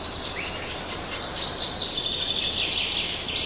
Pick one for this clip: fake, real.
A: real